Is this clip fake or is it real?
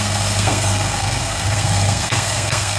fake